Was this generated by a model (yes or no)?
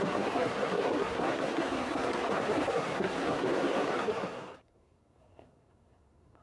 yes